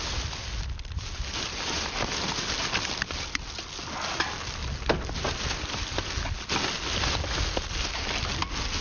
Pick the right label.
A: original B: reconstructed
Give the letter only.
A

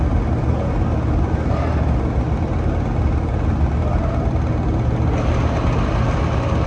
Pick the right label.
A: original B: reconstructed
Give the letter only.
A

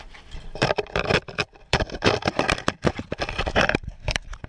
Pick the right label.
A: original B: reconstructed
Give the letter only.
B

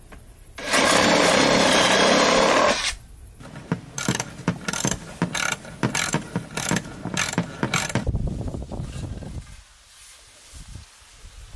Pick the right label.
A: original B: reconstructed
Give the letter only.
A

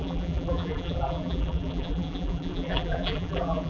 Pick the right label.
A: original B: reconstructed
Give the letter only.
B